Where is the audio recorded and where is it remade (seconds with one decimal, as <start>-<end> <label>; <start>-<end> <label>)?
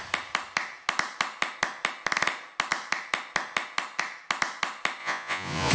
0.0-5.0 recorded; 5.0-5.7 remade